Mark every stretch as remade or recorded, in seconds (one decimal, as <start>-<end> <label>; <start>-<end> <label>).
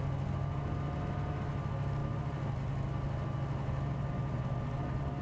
0.0-5.2 recorded